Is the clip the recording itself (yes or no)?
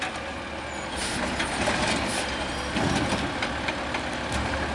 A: yes